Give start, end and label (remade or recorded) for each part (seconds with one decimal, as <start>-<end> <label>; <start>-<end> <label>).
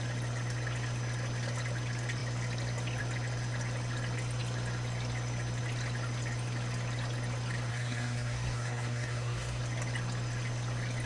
0.0-7.7 recorded; 7.7-9.6 remade; 9.6-11.1 recorded